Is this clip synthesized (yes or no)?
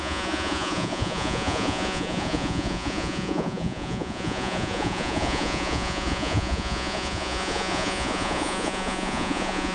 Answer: yes